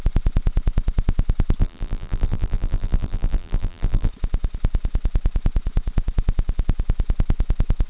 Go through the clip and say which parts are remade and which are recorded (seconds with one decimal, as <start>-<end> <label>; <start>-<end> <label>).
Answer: 0.0-1.6 recorded; 1.6-4.1 remade; 4.1-7.9 recorded